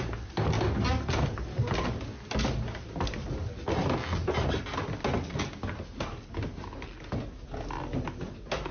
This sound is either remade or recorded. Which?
recorded